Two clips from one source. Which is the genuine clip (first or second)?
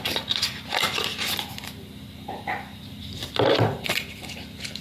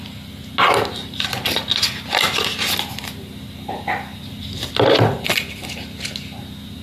second